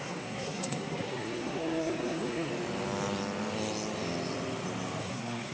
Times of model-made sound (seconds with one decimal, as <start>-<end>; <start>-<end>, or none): 0.0-2.5; 5.0-5.5